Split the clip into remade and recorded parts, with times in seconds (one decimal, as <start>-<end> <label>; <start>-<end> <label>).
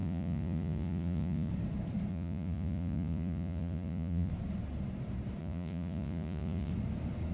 0.0-1.5 remade; 1.5-2.1 recorded; 2.1-4.3 remade; 4.3-5.4 recorded; 5.4-6.7 remade; 6.7-7.3 recorded